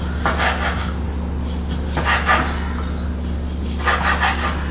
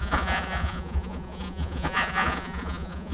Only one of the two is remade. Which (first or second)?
second